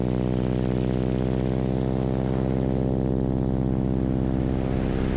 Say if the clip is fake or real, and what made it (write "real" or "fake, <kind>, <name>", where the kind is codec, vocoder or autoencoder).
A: real